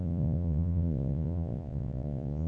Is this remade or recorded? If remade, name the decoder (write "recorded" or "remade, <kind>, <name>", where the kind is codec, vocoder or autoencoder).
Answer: remade, vocoder, Vocos